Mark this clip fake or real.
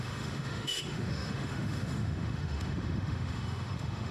fake